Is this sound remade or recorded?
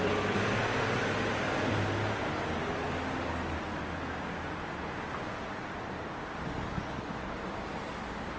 recorded